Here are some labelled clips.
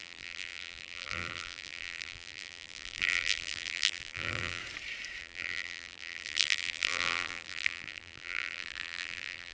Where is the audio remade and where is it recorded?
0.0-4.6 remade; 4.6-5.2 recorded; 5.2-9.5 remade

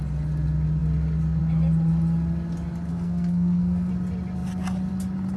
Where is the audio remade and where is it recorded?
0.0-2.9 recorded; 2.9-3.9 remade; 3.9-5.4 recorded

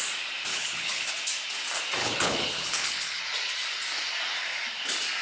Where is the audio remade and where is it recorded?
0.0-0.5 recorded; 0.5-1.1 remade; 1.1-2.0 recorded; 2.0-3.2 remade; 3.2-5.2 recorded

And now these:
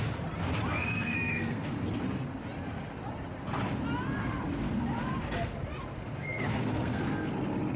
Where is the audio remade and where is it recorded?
0.0-0.7 recorded; 0.7-1.7 remade; 1.7-6.5 recorded; 6.5-7.3 remade; 7.3-7.8 recorded